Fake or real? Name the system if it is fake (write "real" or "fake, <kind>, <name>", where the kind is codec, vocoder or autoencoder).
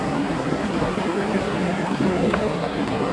fake, codec, SNAC